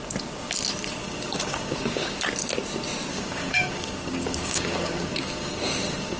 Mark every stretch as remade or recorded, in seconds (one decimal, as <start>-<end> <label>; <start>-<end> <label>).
0.0-1.0 recorded; 1.0-2.2 remade; 2.2-3.1 recorded; 3.1-6.2 remade